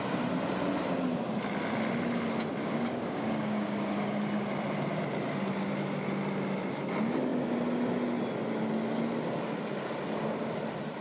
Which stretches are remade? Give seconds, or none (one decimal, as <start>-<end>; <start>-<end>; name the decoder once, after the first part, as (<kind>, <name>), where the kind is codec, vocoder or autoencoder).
2.6-4.2 (codec, DAC)